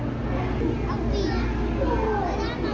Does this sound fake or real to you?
real